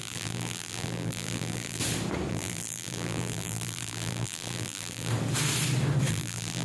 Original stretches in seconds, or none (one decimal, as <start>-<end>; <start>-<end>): 1.8-2.3; 5.1-6.1